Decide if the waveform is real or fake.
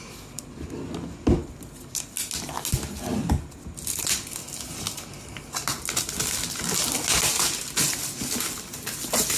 real